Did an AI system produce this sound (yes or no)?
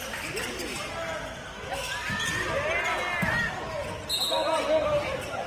no